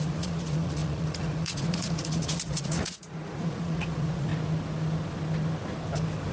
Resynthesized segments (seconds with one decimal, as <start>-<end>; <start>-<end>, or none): 0.0-4.3